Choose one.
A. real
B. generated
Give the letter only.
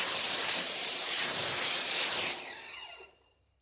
B